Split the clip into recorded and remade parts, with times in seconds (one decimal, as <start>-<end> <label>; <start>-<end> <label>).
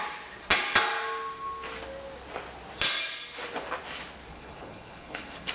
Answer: 0.0-4.3 recorded; 4.3-5.5 remade